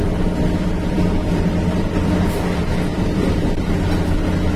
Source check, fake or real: fake